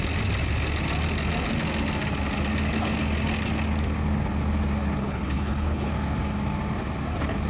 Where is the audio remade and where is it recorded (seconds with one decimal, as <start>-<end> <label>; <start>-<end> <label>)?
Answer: 0.0-5.0 recorded; 5.0-5.9 remade; 5.9-7.5 recorded